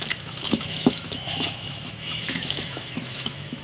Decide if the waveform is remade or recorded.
remade